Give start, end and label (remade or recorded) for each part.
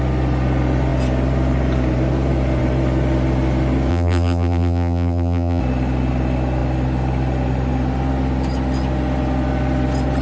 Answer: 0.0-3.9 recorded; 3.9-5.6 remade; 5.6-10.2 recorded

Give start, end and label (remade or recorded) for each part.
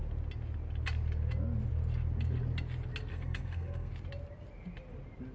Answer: 0.0-3.1 recorded; 3.1-3.9 remade; 3.9-5.3 recorded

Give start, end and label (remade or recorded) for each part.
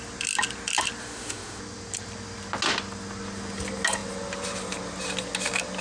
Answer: 0.0-1.0 recorded; 1.0-1.6 remade; 1.6-5.8 recorded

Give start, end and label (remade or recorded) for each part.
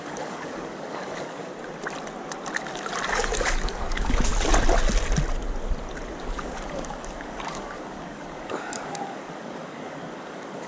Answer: 0.0-1.5 remade; 1.5-3.1 recorded; 3.1-4.3 remade; 4.3-6.2 recorded; 6.2-10.7 remade